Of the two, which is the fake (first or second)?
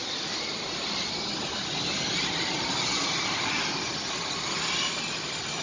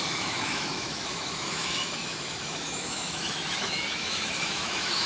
second